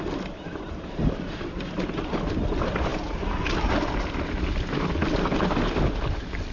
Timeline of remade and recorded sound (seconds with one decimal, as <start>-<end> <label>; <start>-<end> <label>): 0.0-6.5 recorded